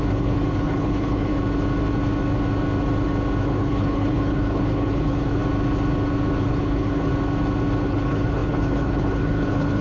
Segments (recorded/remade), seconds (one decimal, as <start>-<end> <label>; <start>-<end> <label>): 0.0-1.3 remade; 1.3-3.4 recorded; 3.4-5.4 remade; 5.4-6.4 recorded; 6.4-7.1 remade; 7.1-7.8 recorded; 7.8-9.8 remade